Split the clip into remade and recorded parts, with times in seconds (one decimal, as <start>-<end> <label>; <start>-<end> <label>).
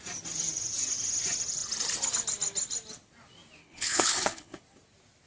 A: 0.0-3.6 recorded; 3.6-4.6 remade; 4.6-5.3 recorded